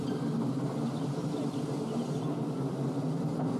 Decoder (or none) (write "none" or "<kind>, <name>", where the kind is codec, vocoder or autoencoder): none